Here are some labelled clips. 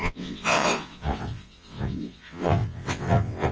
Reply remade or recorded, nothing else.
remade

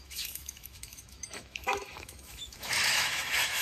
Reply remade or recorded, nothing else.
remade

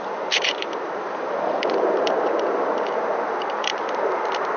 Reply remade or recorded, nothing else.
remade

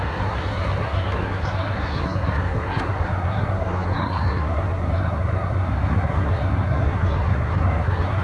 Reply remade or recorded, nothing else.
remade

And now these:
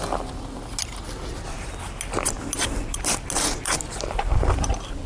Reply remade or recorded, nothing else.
recorded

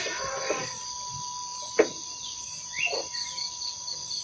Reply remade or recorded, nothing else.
remade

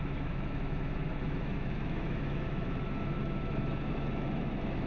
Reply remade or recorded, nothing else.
remade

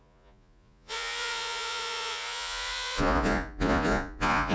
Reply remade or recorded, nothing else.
remade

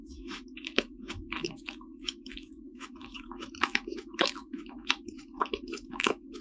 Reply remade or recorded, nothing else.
remade